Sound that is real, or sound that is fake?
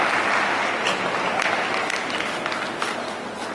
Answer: real